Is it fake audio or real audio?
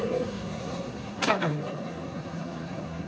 fake